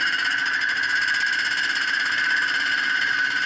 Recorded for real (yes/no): yes